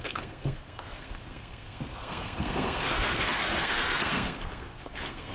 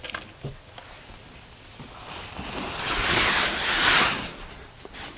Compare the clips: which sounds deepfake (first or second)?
first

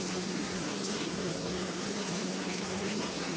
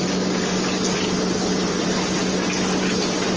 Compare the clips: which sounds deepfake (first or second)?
first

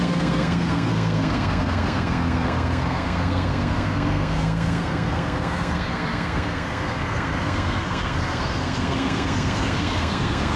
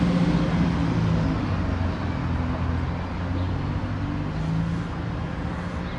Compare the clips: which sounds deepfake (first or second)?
first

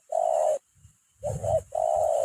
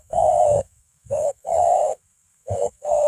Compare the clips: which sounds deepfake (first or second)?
second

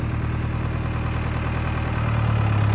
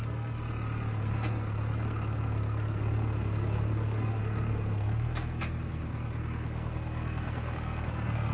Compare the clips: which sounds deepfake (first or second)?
second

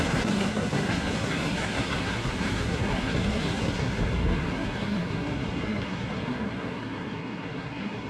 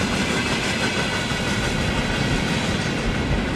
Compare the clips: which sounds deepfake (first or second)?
first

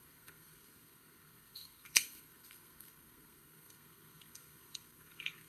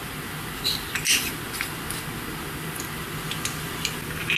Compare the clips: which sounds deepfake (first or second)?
first